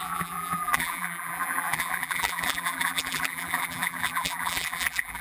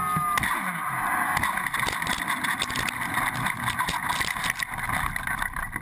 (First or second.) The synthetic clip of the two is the first